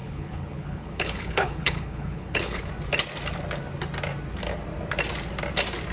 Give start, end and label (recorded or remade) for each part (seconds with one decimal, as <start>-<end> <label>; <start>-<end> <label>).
0.0-2.7 remade; 2.7-5.9 recorded